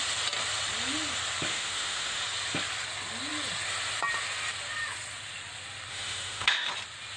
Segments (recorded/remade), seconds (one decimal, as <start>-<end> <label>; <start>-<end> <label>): 0.0-1.5 recorded; 1.5-2.2 remade; 2.2-5.9 recorded; 5.9-6.7 remade; 6.7-7.2 recorded